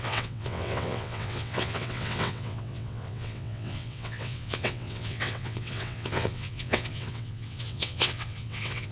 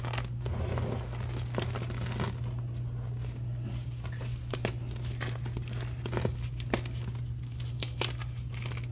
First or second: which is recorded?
second